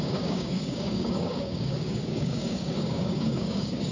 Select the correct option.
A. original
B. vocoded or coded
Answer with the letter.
B